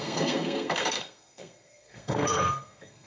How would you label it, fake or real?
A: fake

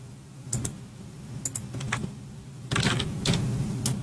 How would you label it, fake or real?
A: real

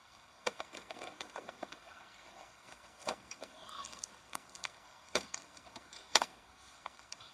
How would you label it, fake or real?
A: fake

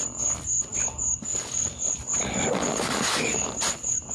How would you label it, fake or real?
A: real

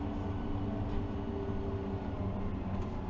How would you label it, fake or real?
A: real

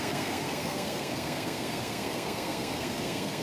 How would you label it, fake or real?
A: fake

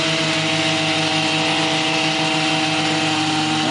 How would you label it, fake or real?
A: real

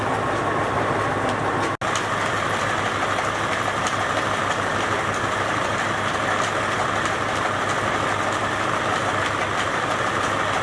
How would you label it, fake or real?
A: real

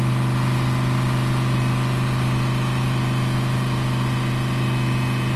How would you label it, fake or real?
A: real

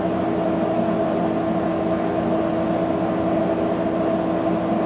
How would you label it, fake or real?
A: real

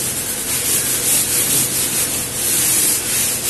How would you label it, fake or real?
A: real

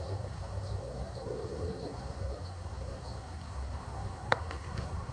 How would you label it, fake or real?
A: fake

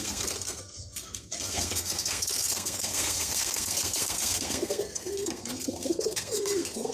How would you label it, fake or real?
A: fake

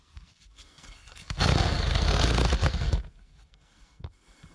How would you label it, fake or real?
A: fake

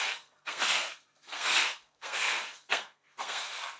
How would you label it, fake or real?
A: fake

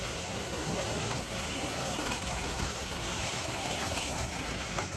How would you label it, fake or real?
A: fake